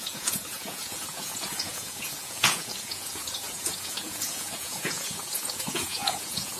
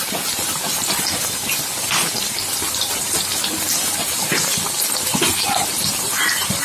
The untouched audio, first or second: second